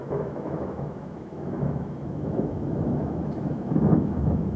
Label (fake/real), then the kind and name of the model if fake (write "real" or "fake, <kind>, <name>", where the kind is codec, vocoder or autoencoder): fake, autoencoder, DAC-VAE